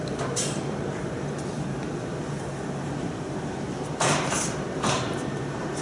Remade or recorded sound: remade